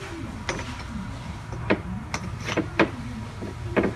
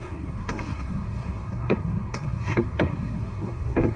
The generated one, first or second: second